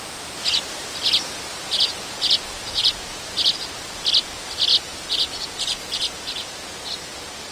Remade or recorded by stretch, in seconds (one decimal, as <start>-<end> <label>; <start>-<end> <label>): 0.0-1.5 recorded; 1.5-3.2 remade; 3.2-4.7 recorded; 4.7-6.9 remade; 6.9-7.5 recorded